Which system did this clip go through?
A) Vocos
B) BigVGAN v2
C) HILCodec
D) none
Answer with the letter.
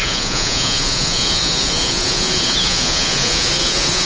A